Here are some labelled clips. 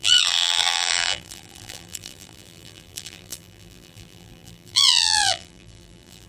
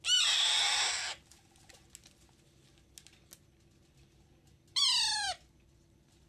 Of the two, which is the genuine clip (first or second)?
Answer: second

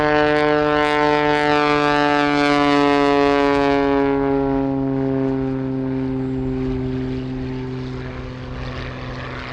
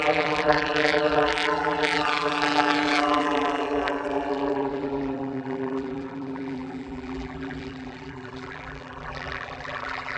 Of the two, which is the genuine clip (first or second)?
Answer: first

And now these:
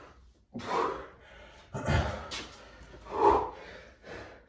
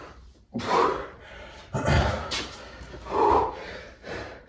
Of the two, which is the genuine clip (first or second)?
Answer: first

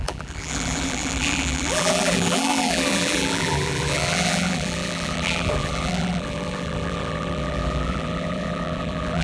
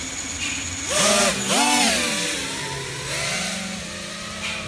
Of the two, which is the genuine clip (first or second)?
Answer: second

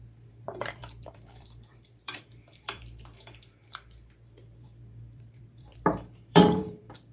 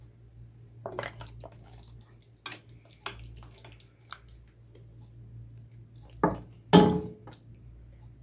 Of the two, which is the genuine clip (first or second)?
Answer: second